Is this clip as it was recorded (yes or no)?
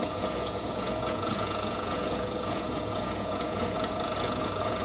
no